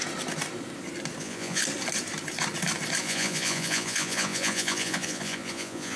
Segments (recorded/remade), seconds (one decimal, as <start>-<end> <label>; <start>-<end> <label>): 0.0-1.2 recorded; 1.2-1.6 remade; 1.6-3.0 recorded; 3.0-6.0 remade